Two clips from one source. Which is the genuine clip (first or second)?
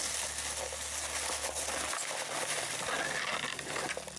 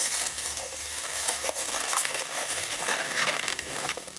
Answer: first